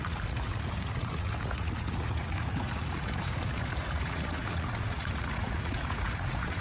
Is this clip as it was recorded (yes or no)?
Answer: no